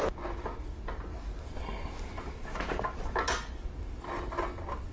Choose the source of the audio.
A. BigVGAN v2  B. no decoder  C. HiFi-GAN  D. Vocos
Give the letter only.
B